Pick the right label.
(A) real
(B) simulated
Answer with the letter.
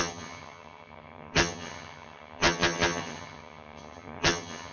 B